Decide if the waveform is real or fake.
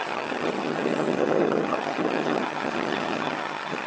fake